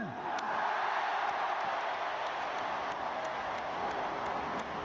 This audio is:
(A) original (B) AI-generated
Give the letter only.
A